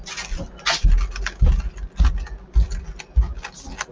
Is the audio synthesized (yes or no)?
no